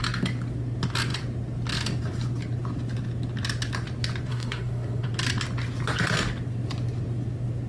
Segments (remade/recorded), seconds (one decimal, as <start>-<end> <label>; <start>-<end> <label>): 0.0-4.3 recorded; 4.3-5.1 remade; 5.1-7.7 recorded